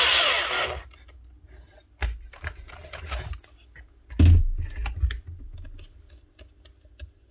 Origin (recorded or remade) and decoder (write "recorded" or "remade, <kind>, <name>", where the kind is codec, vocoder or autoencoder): recorded